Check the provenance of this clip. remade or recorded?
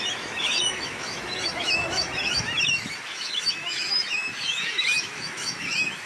remade